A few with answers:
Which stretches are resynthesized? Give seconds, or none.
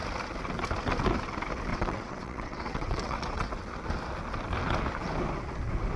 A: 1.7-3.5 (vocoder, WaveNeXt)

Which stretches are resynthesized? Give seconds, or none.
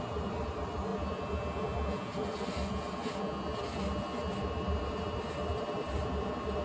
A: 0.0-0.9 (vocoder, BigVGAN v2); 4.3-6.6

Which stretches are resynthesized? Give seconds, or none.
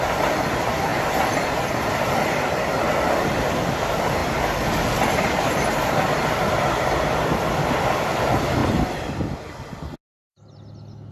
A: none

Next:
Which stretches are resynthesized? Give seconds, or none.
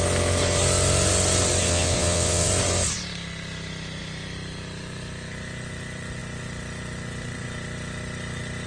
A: 1.6-2.5 (vocoder, WaveNeXt)